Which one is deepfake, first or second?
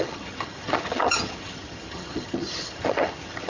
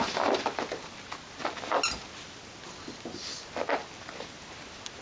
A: first